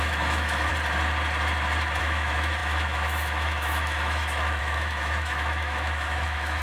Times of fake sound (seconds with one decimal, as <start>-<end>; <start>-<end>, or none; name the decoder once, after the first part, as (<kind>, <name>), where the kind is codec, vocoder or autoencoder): 0.0-0.7 (autoencoder, DAC-VAE); 2.0-6.6